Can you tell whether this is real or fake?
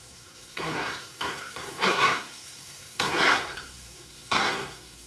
fake